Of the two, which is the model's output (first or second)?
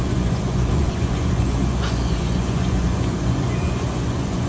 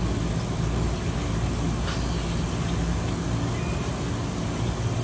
first